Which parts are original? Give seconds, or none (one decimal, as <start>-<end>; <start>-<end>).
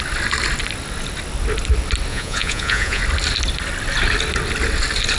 0.0-2.1; 3.0-5.2